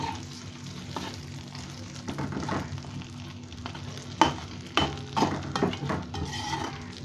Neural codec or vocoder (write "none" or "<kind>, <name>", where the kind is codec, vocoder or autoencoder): none